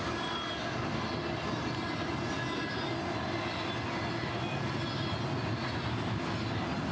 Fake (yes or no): no